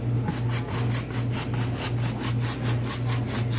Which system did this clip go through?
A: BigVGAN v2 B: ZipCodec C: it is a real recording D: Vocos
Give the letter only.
C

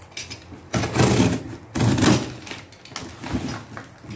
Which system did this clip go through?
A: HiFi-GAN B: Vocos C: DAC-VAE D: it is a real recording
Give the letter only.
D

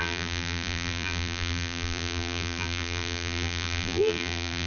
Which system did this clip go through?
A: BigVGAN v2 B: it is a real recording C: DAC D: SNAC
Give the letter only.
A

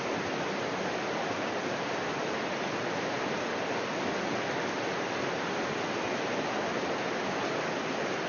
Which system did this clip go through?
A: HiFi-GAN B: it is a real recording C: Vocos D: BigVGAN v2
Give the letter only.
B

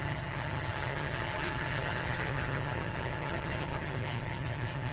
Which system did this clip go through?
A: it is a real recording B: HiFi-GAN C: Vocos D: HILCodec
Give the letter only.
B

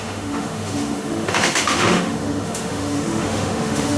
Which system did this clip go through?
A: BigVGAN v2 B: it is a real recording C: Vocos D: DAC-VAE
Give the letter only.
D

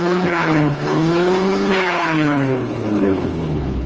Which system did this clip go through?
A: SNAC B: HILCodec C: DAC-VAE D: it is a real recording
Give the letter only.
B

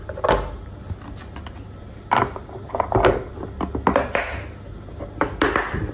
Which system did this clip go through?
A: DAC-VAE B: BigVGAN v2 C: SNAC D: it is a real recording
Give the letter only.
D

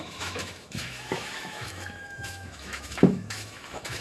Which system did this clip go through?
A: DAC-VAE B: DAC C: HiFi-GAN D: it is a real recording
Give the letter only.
A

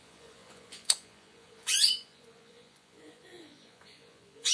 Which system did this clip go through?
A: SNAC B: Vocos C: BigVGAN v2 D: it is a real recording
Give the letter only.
B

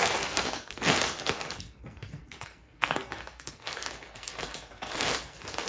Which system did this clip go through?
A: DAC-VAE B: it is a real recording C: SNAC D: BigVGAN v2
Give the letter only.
C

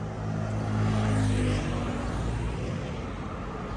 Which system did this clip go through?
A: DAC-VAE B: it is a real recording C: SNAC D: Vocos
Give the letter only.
B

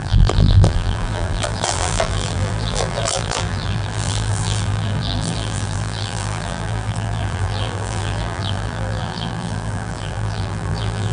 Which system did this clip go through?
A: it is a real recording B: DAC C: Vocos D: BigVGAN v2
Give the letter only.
D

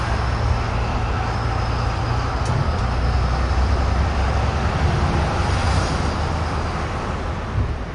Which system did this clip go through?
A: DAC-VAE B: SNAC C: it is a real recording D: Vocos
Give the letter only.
C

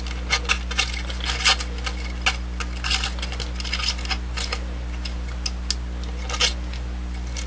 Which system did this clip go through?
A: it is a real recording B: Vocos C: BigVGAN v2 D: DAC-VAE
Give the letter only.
A